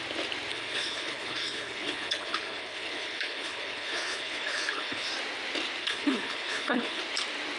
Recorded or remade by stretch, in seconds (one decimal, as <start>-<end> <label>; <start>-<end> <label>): 0.0-0.5 recorded; 0.5-5.1 remade; 5.1-5.8 recorded; 5.8-7.0 remade; 7.0-7.6 recorded